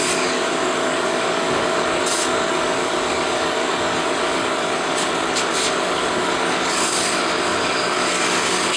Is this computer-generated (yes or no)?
yes